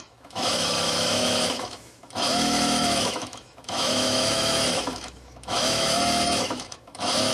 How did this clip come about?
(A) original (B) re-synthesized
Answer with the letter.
B